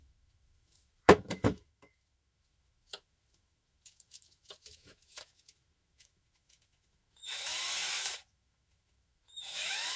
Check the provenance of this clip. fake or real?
fake